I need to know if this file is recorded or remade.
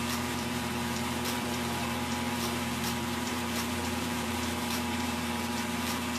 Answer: remade